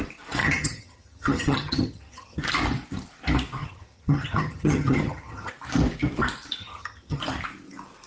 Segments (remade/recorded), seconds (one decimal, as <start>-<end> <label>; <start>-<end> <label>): 0.0-0.4 recorded; 0.4-2.4 remade; 2.4-3.6 recorded; 3.6-5.5 remade; 5.5-6.6 recorded; 6.6-7.2 remade; 7.2-8.1 recorded

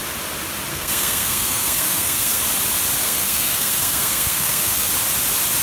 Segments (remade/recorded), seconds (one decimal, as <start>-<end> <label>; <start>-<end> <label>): 0.0-0.7 recorded; 0.7-2.4 remade; 2.4-3.0 recorded; 3.0-4.9 remade; 4.9-5.6 recorded